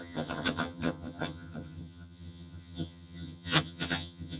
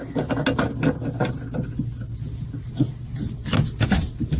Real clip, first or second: second